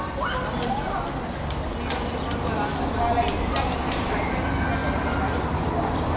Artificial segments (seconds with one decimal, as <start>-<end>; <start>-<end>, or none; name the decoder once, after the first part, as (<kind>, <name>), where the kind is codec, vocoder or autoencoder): none